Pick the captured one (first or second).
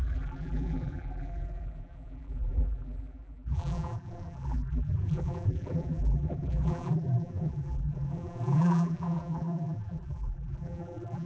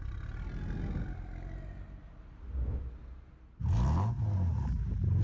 second